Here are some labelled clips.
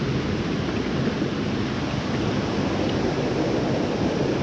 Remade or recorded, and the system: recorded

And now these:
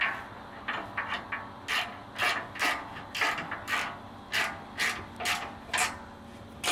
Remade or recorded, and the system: recorded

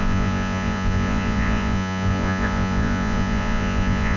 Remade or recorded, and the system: remade, vocoder, Vocos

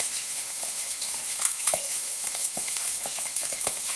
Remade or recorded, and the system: remade, autoencoder, DAC-VAE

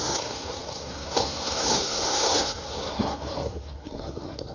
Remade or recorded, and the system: remade, codec, SNAC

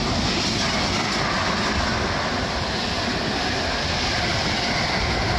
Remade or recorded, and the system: recorded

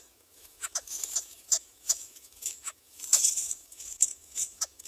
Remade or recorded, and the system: remade, autoencoder, DAC-VAE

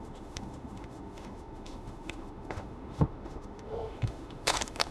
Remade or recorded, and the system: remade, autoencoder, DAC-VAE